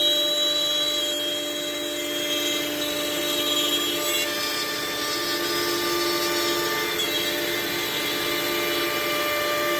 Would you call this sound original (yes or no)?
yes